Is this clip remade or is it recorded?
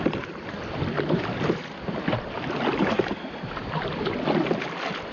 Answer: recorded